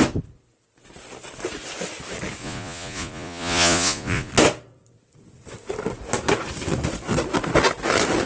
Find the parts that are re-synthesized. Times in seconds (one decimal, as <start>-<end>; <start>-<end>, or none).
2.4-4.3